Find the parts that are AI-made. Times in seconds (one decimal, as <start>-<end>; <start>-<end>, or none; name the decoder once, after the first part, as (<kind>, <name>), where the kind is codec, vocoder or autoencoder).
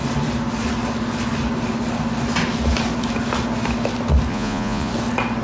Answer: 4.3-4.9 (vocoder, Vocos)